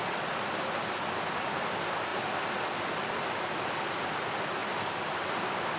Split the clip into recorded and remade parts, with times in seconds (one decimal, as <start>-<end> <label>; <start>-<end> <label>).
0.0-5.8 recorded